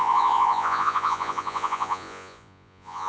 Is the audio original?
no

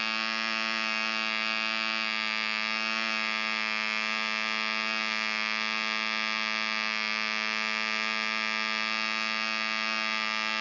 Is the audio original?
yes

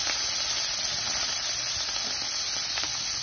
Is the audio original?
yes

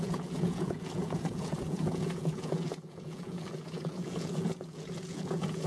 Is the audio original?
no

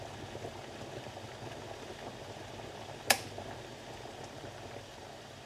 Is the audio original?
yes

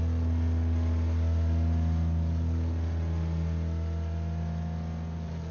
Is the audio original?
yes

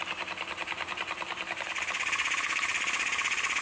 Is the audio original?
yes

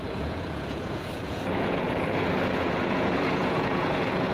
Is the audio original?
no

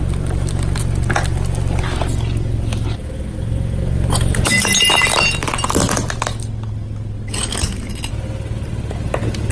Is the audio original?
yes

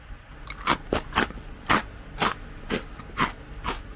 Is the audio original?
yes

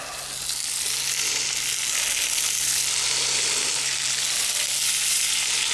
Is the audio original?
yes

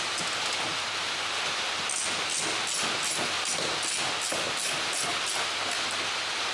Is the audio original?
yes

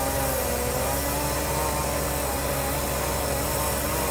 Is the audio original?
yes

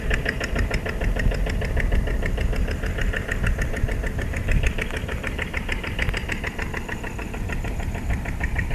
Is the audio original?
yes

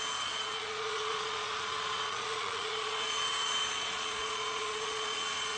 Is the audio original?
no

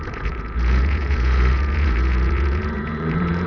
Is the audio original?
no